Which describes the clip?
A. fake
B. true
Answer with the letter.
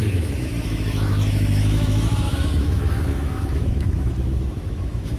A